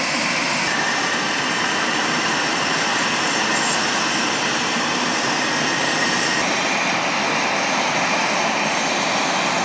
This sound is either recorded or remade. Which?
recorded